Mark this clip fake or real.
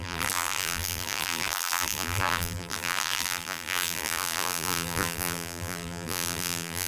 fake